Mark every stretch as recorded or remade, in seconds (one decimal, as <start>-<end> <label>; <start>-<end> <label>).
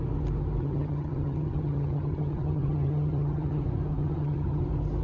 0.0-0.6 recorded; 0.6-3.6 remade; 3.6-4.0 recorded; 4.0-4.6 remade; 4.6-5.0 recorded